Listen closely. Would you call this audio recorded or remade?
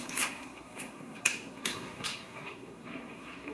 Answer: remade